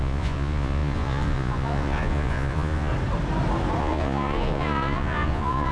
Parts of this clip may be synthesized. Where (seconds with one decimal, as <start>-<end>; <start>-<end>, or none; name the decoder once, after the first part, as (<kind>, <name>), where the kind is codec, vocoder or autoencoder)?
0.0-2.9 (vocoder, Vocos); 3.8-5.7